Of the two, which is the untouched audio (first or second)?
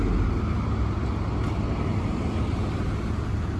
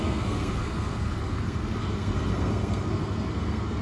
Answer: first